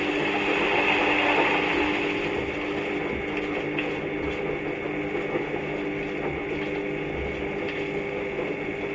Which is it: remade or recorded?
recorded